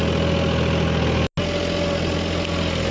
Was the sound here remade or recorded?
recorded